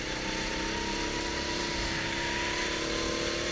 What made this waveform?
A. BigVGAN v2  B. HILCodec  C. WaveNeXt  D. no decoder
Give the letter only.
D